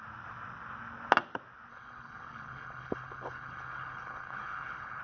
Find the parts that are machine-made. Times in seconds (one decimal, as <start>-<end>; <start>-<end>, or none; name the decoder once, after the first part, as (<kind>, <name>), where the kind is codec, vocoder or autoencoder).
1.7-5.0 (codec, HILCodec)